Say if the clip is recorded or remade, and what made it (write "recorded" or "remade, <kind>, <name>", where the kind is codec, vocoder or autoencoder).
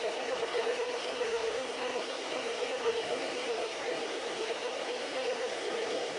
remade, codec, SNAC